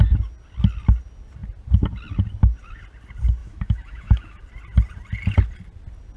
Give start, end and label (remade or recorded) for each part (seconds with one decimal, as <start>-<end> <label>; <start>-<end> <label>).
0.0-3.4 recorded; 3.4-4.4 remade; 4.4-6.2 recorded